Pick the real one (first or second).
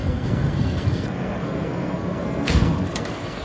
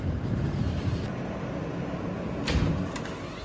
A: second